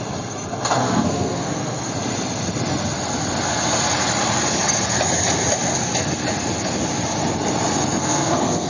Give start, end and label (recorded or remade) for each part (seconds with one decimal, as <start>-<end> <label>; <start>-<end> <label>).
0.0-0.8 recorded; 0.8-1.9 remade; 1.9-8.0 recorded; 8.0-8.7 remade